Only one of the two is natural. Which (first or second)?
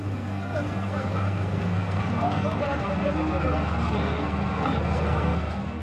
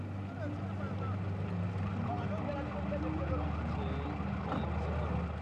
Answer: second